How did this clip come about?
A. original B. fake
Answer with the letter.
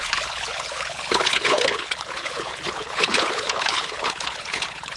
B